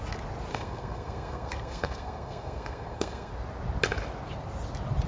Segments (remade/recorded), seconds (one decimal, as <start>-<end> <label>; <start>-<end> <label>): 0.0-0.5 recorded; 0.5-3.3 remade; 3.3-5.1 recorded